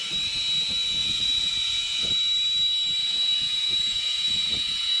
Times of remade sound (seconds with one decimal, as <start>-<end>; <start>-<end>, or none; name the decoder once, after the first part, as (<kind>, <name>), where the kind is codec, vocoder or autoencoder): 1.0-2.1 (vocoder, Vocos); 3.0-5.0